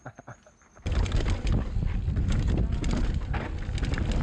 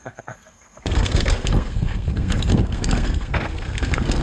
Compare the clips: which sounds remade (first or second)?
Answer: second